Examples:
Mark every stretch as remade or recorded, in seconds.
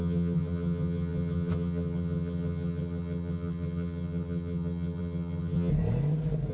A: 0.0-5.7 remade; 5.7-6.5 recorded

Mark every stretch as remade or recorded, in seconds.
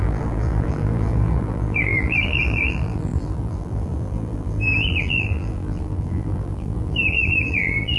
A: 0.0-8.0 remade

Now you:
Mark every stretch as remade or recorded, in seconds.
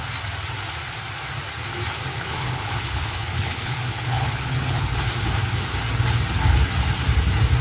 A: 0.0-2.1 recorded; 2.1-5.0 remade; 5.0-7.6 recorded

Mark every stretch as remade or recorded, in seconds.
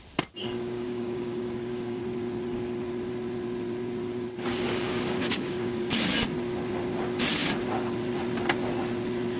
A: 0.0-0.4 recorded; 0.4-2.0 remade; 2.0-4.5 recorded; 4.5-6.1 remade; 6.1-9.4 recorded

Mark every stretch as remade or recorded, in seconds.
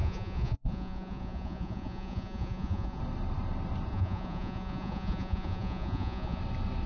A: 0.0-3.0 remade; 3.0-3.9 recorded; 3.9-6.4 remade; 6.4-6.9 recorded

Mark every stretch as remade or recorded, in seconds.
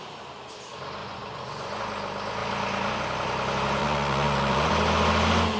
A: 0.0-1.0 recorded; 1.0-1.8 remade; 1.8-3.8 recorded; 3.8-4.7 remade; 4.7-5.6 recorded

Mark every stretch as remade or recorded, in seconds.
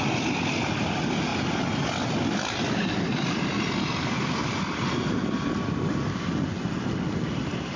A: 0.0-7.8 recorded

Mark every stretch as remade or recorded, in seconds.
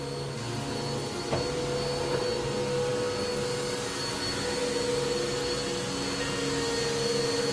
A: 0.0-7.5 recorded